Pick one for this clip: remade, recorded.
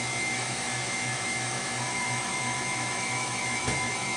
remade